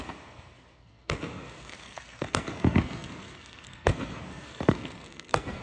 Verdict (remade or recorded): remade